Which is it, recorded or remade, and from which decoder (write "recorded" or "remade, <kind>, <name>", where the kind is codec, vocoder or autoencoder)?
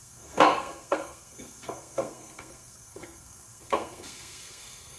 remade, codec, SNAC